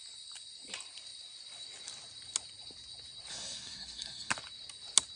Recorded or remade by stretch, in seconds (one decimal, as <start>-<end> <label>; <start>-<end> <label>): 0.0-3.3 recorded; 3.3-4.3 remade; 4.3-5.2 recorded